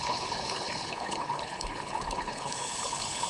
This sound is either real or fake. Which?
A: fake